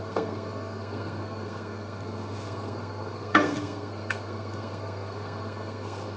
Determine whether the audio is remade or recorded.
remade